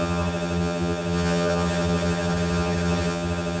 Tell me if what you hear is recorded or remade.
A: remade